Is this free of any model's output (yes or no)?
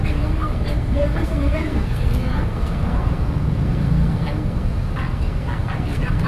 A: no